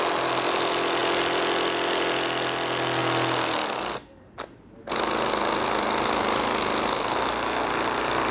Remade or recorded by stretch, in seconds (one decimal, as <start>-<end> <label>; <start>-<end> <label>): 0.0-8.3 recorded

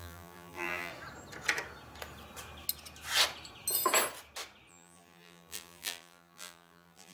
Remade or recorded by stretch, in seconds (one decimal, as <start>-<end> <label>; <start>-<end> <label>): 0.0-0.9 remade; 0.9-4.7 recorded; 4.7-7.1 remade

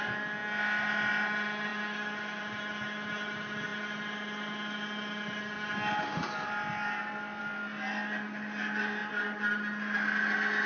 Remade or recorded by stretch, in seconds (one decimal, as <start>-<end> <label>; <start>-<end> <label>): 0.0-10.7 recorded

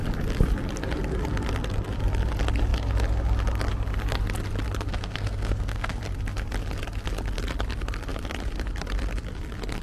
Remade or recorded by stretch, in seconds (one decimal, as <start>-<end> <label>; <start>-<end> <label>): 0.0-4.9 recorded; 4.9-6.0 remade; 6.0-9.8 recorded

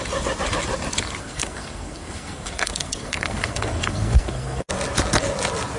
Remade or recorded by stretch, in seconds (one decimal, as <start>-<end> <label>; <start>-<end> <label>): 0.0-1.2 recorded; 1.2-4.7 remade; 4.7-5.8 recorded

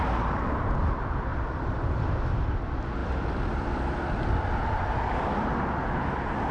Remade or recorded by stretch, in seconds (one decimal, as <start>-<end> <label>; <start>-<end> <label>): 0.0-1.3 recorded; 1.3-2.3 remade; 2.3-3.0 recorded; 3.0-4.3 remade; 4.3-6.5 recorded